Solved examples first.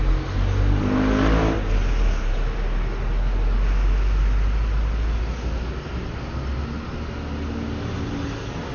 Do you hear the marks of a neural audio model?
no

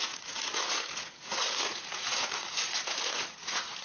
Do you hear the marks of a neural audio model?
yes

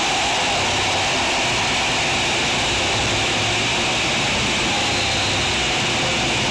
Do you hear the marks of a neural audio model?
no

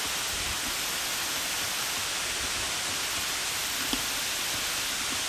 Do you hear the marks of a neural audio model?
no